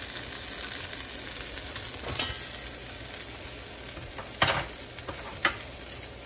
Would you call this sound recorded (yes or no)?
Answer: yes